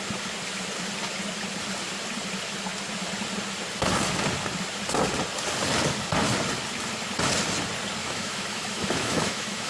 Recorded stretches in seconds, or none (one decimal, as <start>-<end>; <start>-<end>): 0.0-8.0